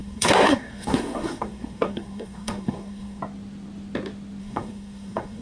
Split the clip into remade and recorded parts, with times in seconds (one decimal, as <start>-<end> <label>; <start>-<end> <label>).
0.0-3.2 remade; 3.2-4.4 recorded; 4.4-5.4 remade